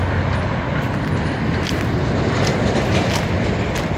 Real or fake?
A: fake